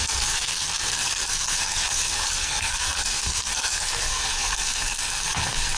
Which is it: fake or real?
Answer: fake